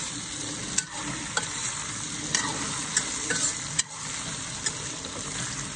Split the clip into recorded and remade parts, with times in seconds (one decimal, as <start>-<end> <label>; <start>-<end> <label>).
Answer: 0.0-5.8 recorded